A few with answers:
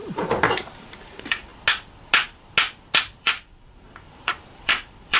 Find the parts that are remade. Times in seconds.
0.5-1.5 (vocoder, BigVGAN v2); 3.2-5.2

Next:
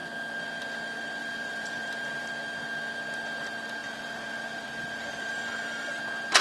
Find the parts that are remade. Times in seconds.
1.2-2.3 (vocoder, BigVGAN v2); 3.8-6.0

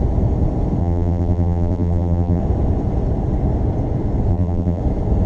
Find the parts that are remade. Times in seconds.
0.8-2.4 (vocoder, BigVGAN v2); 4.3-4.8

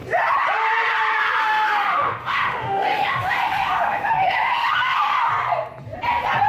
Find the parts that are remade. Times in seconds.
1.4-5.3 (autoencoder, DAC-VAE)

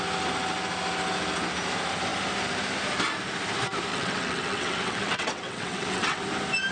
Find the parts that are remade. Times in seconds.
3.9-6.2 (vocoder, WaveNeXt)

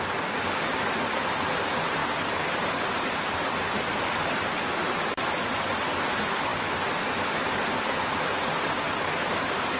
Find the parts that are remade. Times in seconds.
none

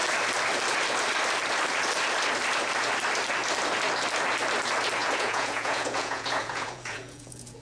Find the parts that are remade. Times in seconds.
5.0-7.6 (vocoder, Vocos)

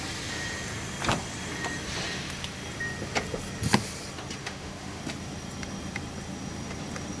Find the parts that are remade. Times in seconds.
4.4-5.0 (autoencoder, DAC-VAE)